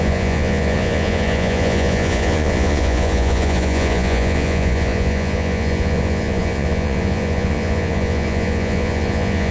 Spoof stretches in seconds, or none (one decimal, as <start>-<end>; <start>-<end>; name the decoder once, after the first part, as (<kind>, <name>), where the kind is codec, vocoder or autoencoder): 0.0-9.5 (vocoder, Vocos)